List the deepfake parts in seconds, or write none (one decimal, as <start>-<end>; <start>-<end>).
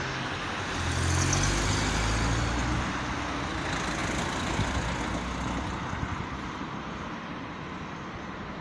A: none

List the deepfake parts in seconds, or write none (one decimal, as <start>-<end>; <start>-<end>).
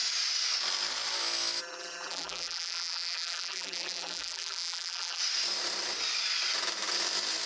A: 1.6-5.2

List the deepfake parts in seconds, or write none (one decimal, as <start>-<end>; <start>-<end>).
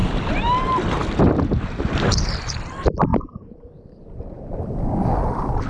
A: 0.0-0.6; 1.0-2.1; 3.1-4.8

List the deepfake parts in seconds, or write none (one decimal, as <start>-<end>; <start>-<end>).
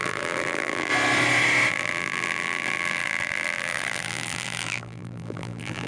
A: 0.0-0.9; 1.7-5.9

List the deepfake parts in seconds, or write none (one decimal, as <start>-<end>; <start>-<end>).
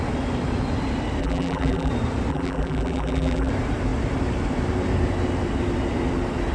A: 1.2-1.9; 2.3-3.5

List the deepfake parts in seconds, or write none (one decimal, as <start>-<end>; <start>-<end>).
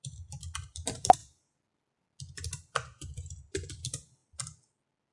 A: 0.0-1.2; 3.7-4.2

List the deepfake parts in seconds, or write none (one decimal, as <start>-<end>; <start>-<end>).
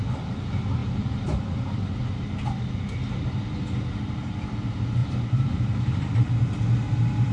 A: 0.8-1.8; 5.0-7.3